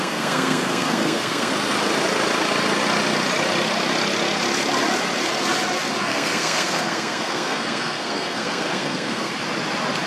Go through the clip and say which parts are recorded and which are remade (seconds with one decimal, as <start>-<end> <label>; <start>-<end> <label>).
0.0-1.5 remade; 1.5-6.0 recorded; 6.0-9.3 remade; 9.3-10.1 recorded